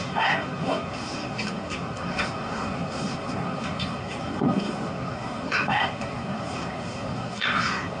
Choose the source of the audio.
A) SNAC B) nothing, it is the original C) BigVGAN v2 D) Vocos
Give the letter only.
A